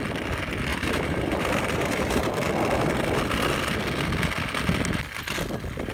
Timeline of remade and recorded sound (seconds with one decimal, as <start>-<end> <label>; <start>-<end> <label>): 0.0-0.7 recorded; 0.7-2.3 remade; 2.3-5.9 recorded